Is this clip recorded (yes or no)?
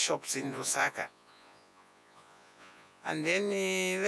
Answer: no